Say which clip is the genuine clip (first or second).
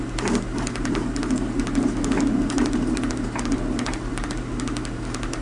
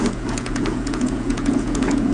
first